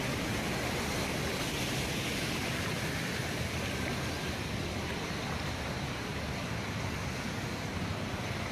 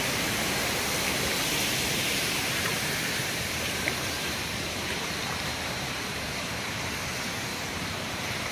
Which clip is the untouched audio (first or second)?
first